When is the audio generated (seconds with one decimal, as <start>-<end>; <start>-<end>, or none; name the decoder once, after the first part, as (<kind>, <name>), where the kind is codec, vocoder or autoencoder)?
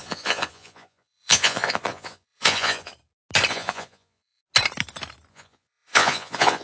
0.0-2.9 (vocoder, Vocos); 3.5-4.4; 5.3-6.6